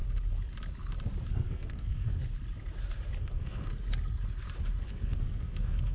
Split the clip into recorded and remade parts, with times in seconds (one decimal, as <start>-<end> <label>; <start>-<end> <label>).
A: 0.0-1.3 recorded; 1.3-2.2 remade; 2.2-3.2 recorded; 3.2-3.7 remade; 3.7-4.9 recorded; 4.9-5.9 remade